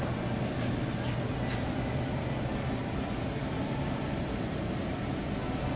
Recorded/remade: recorded